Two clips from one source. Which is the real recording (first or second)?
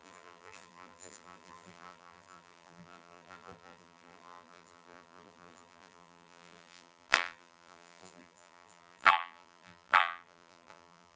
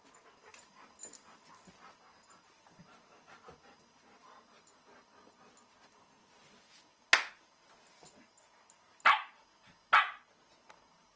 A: second